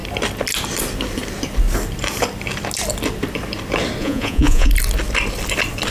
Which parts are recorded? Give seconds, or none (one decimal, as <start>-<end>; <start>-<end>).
0.0-4.0; 4.7-5.9